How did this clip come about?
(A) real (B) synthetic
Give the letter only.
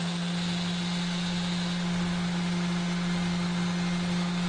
A